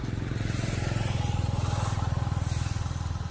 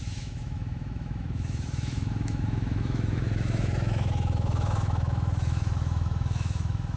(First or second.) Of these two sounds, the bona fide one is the first